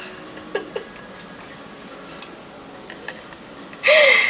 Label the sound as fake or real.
real